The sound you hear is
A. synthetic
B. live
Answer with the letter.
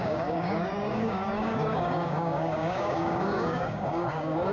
A